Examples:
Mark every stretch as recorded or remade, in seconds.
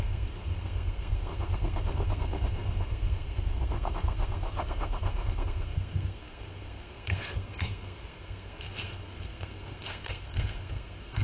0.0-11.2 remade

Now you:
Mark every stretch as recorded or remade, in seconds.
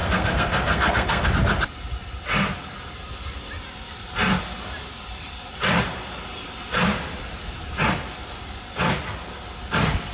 0.0-1.3 remade; 1.3-10.1 recorded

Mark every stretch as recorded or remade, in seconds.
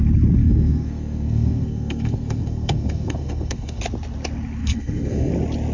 0.0-0.4 recorded; 0.4-3.8 remade; 3.8-4.6 recorded; 4.6-5.3 remade; 5.3-5.7 recorded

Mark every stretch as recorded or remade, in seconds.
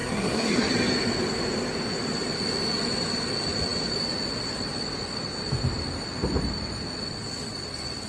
0.0-0.7 remade; 0.7-8.1 recorded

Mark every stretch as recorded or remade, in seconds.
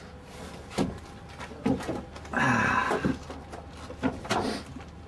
0.0-5.1 recorded